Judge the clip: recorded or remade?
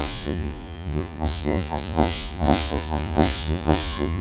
remade